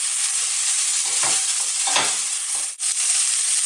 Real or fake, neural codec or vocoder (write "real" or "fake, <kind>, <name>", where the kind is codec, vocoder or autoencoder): fake, vocoder, BigVGAN v2